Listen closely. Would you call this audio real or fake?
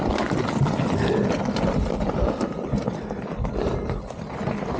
real